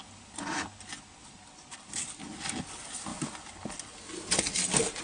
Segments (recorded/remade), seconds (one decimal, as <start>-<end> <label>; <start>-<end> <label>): 0.0-5.0 recorded